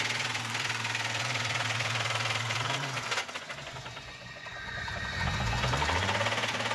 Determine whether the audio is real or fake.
fake